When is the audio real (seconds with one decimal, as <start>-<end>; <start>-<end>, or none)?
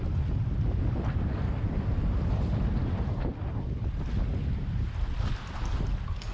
0.0-6.3